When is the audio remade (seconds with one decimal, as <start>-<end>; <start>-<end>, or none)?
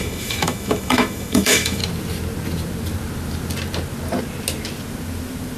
0.0-1.8